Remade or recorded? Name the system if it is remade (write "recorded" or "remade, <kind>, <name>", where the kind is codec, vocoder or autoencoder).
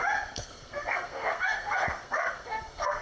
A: remade, codec, SNAC